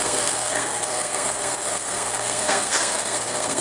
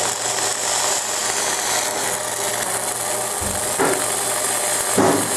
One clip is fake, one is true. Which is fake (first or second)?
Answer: first